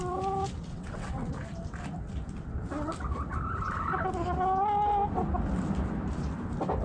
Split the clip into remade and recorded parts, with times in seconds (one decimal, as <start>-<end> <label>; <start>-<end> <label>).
0.0-0.7 recorded; 0.7-1.3 remade; 1.3-6.8 recorded